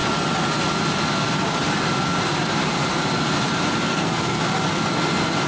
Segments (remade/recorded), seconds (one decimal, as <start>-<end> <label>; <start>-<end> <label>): 0.0-3.9 recorded; 3.9-4.4 remade; 4.4-5.5 recorded